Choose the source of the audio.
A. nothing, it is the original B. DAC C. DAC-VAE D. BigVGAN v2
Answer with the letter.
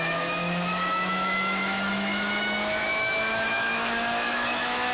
C